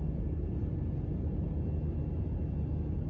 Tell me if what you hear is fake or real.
real